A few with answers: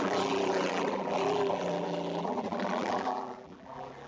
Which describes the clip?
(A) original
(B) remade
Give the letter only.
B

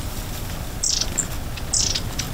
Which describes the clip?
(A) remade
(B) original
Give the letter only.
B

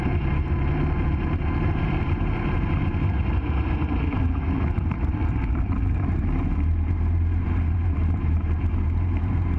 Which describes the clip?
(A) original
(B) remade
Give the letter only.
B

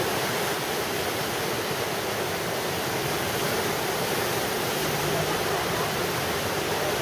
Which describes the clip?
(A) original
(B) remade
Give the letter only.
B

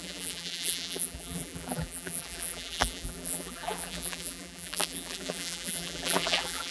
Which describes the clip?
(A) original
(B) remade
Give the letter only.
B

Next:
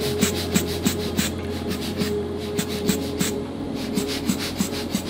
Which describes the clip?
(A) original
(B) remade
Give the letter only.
B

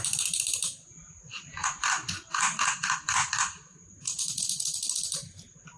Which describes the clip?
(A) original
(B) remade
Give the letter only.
B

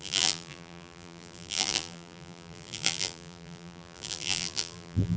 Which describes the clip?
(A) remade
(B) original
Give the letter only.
A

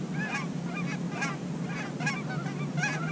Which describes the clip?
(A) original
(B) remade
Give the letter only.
A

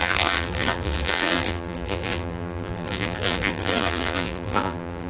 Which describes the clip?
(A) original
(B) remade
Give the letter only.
B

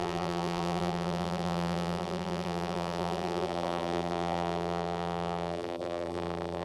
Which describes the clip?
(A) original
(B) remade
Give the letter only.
B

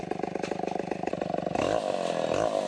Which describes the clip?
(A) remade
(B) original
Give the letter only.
B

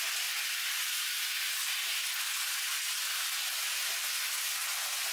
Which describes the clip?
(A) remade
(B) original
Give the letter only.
B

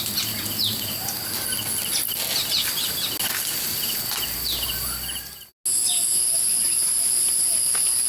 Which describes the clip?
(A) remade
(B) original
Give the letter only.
B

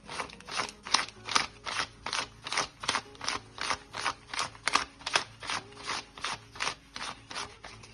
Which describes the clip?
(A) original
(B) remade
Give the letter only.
A